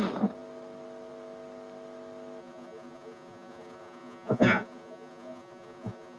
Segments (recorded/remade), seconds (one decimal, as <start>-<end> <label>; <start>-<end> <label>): 0.0-2.4 recorded; 2.4-6.2 remade